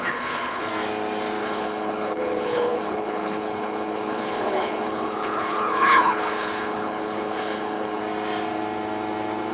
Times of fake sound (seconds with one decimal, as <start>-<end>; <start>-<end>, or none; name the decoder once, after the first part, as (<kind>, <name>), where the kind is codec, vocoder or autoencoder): 0.0-0.7 (codec, HILCodec); 1.4-8.0